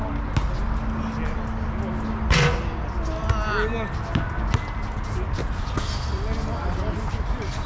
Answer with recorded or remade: recorded